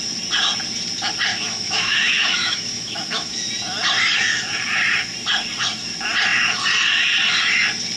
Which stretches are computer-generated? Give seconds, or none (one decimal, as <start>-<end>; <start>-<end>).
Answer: 1.3-3.5